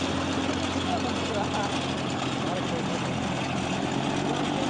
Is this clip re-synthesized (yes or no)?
no